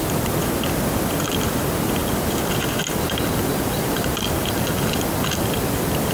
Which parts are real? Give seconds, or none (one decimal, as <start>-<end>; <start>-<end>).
0.0-6.1